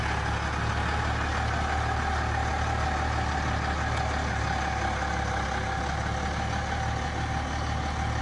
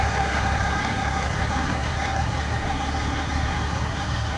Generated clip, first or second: second